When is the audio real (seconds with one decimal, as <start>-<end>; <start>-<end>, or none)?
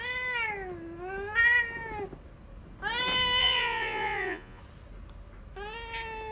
0.0-3.4; 4.6-6.3